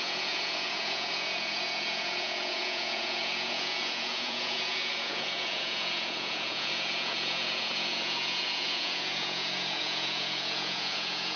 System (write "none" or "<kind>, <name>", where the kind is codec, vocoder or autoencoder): vocoder, Vocos